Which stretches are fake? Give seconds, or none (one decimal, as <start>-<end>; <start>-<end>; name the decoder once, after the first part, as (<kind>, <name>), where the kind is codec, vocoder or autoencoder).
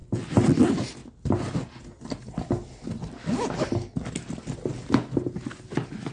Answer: none